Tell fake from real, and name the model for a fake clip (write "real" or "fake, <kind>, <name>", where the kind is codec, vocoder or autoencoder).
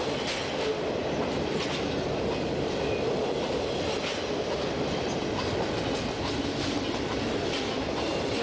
real